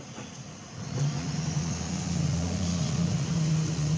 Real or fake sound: fake